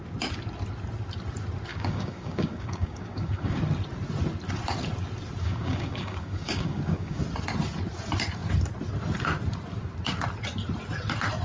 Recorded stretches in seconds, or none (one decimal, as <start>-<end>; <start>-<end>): 0.0-1.7; 3.6-5.4; 7.2-11.4